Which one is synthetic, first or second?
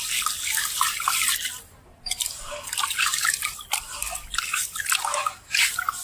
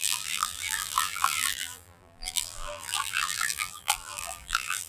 second